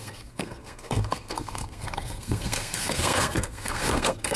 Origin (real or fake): fake